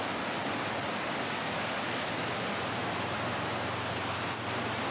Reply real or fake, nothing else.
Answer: real